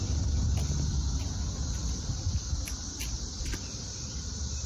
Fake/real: real